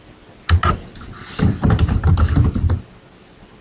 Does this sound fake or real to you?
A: real